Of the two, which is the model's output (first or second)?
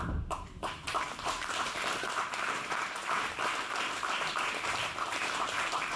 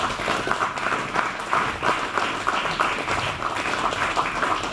first